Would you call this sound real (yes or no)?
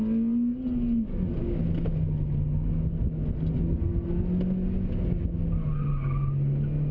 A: yes